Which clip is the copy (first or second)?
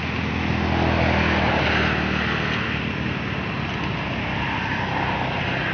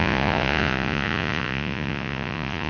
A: second